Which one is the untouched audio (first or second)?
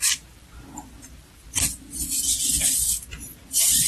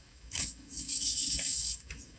first